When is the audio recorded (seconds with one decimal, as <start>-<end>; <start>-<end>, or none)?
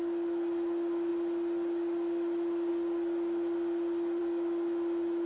0.0-5.3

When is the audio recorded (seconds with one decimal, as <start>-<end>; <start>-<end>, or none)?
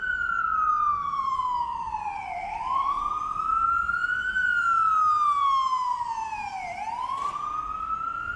0.0-0.9; 1.9-2.4; 3.0-8.4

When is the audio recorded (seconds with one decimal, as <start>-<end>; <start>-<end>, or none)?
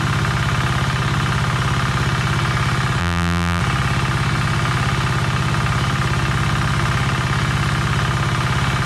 0.0-3.0; 3.6-8.9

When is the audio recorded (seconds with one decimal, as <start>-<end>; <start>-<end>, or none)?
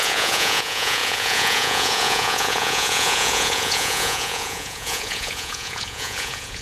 none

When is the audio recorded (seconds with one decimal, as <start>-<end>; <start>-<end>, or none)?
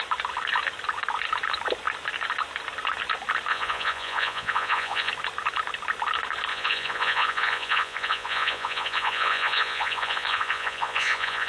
0.0-3.5; 5.1-6.5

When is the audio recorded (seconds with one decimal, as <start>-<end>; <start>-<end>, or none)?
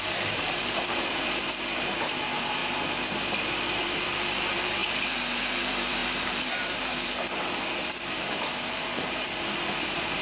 2.6-3.8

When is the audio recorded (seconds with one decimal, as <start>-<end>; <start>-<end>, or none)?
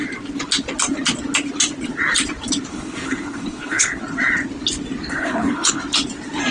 0.0-2.7; 4.0-5.1; 5.8-6.5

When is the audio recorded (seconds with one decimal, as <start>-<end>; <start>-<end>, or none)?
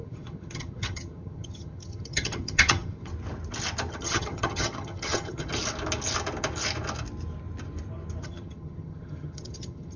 3.1-3.9; 5.5-8.2